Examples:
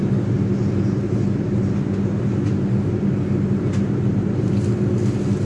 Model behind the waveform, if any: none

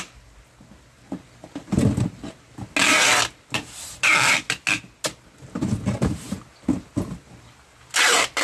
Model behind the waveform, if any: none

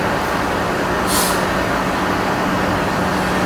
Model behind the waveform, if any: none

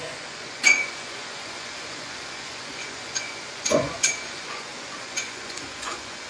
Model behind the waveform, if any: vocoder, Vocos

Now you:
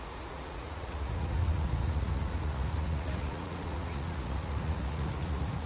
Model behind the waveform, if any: vocoder, Vocos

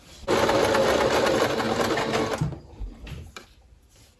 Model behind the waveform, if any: none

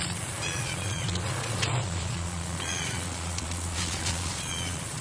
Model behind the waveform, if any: vocoder, Vocos